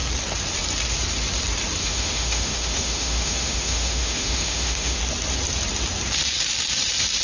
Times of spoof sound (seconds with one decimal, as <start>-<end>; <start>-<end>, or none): 1.8-5.0

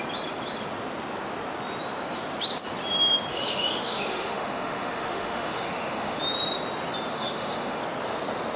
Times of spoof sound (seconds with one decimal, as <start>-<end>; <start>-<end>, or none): 3.3-6.2; 7.1-7.8

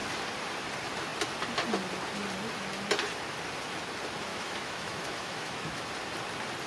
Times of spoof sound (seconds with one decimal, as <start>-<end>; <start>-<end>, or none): 4.3-5.9

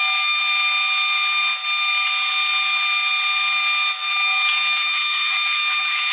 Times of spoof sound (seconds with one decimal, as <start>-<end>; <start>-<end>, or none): 0.0-0.4; 4.1-6.1

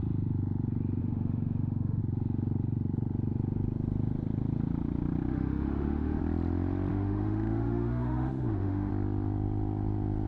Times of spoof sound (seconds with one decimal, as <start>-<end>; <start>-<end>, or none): 1.0-2.0; 5.3-6.2; 6.9-8.9

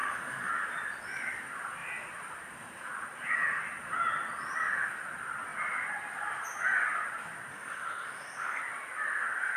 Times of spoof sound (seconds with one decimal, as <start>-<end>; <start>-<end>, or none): 0.0-0.5; 7.5-8.6

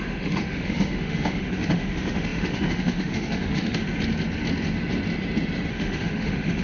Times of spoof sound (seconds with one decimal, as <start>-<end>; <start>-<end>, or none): 0.0-3.8; 5.7-6.6